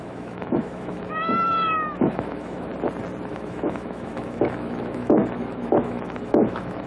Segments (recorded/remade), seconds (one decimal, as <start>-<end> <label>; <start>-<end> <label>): 0.0-2.7 remade; 2.7-3.3 recorded; 3.3-6.9 remade